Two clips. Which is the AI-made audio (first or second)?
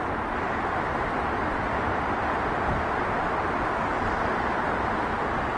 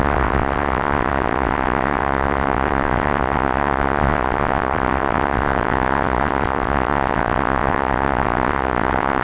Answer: second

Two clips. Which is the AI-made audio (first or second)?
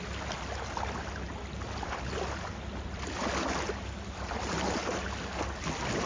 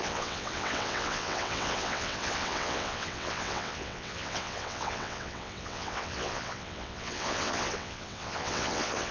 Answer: second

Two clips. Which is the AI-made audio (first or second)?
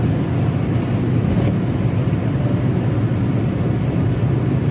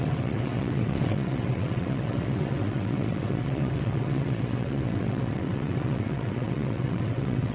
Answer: second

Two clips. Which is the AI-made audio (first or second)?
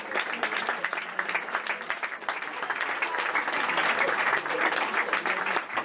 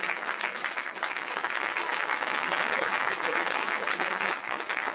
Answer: second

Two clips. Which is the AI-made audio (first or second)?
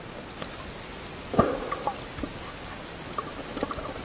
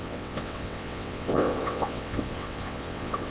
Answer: second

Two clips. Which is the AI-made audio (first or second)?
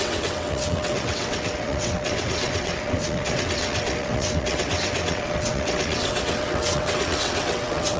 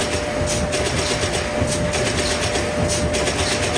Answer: first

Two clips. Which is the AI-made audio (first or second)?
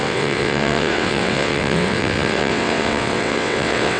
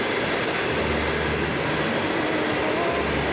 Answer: first